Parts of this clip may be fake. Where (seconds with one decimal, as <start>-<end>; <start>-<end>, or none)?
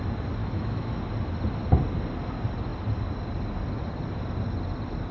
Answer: 0.4-1.0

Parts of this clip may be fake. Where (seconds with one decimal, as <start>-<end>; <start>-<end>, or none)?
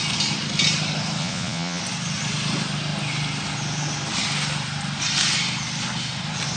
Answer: 1.2-1.8